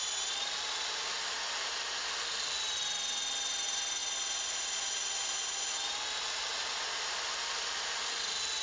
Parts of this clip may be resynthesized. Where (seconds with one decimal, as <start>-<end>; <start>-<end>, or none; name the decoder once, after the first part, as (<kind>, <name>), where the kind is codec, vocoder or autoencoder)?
none